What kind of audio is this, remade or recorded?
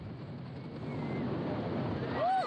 recorded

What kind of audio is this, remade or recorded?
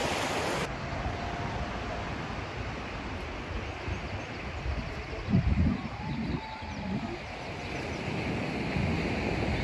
recorded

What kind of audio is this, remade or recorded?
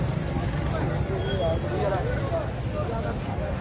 recorded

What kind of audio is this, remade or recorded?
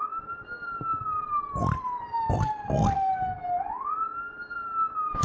recorded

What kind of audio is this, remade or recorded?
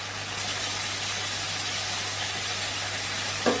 recorded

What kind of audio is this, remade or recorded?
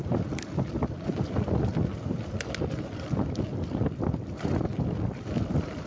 recorded